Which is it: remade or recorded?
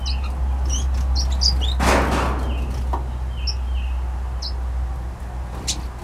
recorded